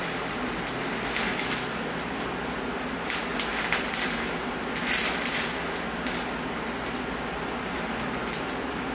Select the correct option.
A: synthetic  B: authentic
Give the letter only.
B